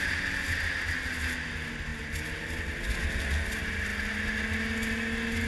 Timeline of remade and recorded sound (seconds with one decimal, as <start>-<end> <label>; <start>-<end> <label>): 0.0-5.5 recorded